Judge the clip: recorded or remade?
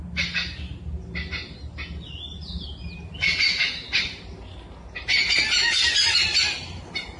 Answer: recorded